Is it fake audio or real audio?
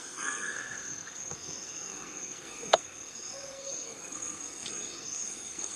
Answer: fake